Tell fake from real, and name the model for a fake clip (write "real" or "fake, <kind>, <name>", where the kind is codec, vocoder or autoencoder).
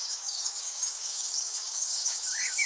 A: fake, codec, DAC